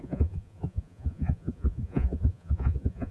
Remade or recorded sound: remade